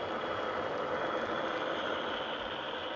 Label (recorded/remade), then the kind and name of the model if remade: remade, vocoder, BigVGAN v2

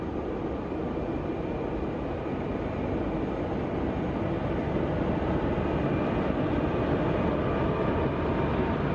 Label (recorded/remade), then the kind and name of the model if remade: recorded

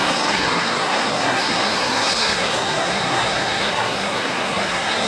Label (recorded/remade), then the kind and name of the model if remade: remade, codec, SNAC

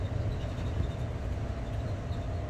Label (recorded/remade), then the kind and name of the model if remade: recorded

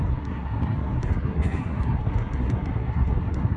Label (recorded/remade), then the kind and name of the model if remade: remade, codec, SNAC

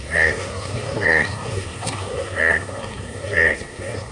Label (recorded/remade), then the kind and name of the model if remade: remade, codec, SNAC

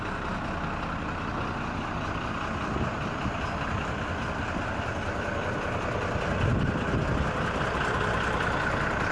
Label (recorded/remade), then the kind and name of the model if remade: recorded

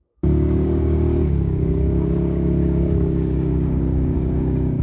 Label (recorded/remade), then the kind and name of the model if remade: remade, codec, DAC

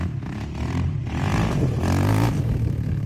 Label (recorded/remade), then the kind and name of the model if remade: recorded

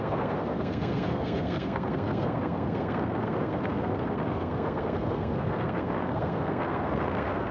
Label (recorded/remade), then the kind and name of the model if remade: remade, codec, SNAC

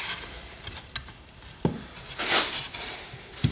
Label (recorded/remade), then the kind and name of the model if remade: remade, vocoder, BigVGAN v2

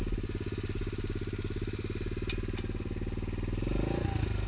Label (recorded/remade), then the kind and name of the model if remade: recorded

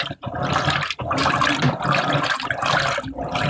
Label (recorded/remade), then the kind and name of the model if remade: recorded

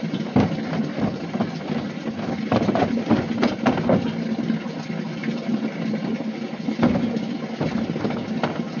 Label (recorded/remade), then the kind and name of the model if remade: recorded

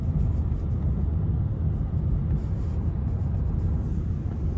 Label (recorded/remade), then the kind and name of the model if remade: recorded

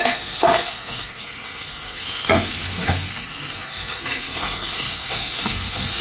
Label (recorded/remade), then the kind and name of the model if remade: remade, codec, SNAC